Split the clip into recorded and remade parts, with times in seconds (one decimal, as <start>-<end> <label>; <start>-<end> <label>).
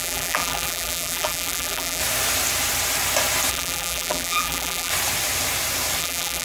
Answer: 0.0-2.0 remade; 2.0-3.5 recorded; 3.5-4.9 remade; 4.9-6.0 recorded; 6.0-6.4 remade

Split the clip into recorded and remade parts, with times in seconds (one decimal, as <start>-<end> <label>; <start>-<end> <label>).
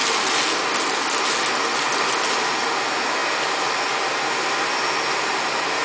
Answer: 0.0-5.8 recorded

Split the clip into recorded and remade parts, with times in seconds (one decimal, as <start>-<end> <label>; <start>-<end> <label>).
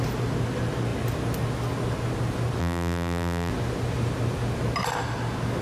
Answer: 0.0-2.6 recorded; 2.6-3.5 remade; 3.5-5.6 recorded